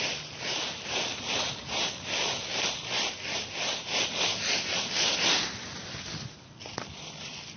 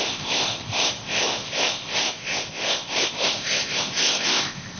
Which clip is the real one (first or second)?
first